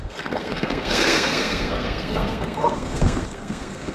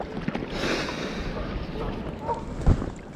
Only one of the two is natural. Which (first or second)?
second